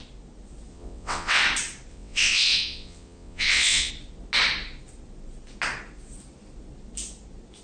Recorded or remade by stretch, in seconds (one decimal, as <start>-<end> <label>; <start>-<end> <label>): 0.0-0.7 recorded; 0.7-1.4 remade; 1.4-1.9 recorded; 1.9-3.9 remade; 3.9-7.6 recorded